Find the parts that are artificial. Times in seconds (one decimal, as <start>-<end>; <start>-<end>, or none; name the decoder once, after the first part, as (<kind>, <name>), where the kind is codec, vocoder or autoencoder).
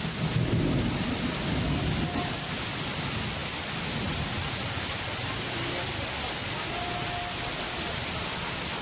none